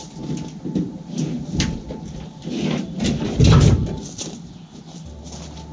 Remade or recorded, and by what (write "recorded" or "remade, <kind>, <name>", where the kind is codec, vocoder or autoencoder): recorded